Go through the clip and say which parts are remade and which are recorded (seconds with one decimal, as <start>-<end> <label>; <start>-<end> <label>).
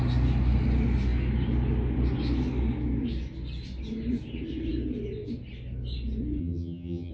0.0-6.4 recorded; 6.4-7.1 remade